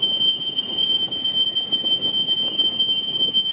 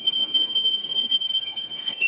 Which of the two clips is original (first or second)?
first